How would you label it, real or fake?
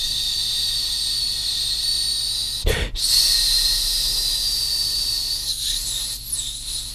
real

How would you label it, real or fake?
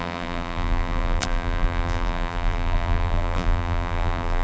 fake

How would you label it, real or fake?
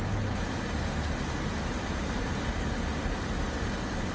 real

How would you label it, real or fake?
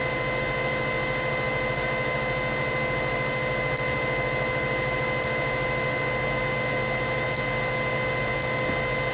real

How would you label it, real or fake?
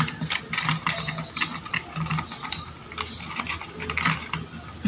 real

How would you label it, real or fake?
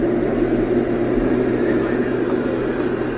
real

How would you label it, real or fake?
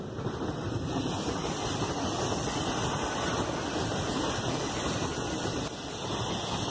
real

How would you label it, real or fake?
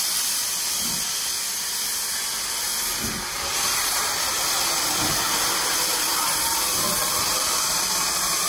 real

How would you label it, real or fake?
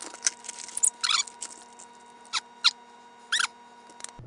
real